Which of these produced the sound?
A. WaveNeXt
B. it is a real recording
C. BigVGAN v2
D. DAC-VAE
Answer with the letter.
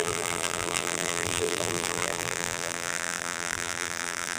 C